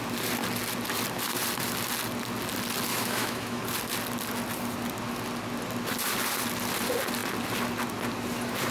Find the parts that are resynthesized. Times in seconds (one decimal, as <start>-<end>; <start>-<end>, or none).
2.9-3.6